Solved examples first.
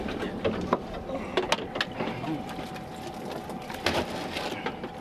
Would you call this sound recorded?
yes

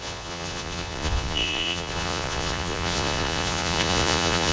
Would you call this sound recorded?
no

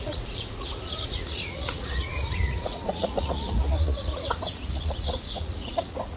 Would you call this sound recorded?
no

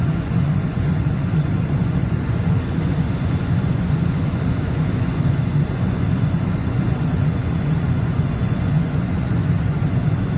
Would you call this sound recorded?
no